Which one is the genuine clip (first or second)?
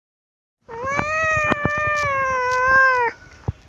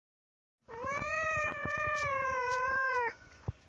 first